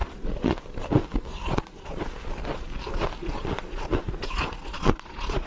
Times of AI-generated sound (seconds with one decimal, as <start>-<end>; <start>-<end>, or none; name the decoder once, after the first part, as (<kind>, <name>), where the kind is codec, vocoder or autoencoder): 0.0-0.6 (vocoder, Vocos); 1.3-2.0; 3.2-5.5